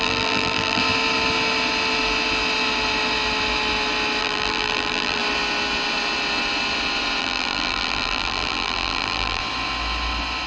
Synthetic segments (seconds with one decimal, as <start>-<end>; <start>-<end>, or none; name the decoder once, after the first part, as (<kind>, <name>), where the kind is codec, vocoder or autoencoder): 0.0-0.8 (vocoder, BigVGAN v2); 4.2-5.2; 7.2-9.4